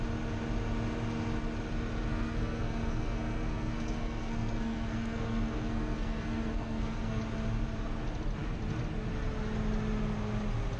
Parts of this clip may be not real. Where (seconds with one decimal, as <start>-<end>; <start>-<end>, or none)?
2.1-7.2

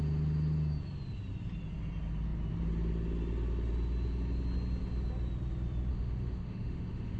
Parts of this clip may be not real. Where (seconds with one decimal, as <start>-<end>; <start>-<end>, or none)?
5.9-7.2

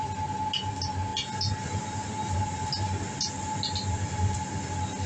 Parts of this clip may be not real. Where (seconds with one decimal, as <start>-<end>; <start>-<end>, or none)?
none

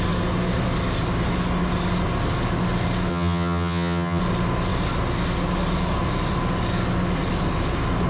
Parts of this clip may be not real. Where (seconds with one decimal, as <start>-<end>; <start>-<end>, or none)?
3.1-4.2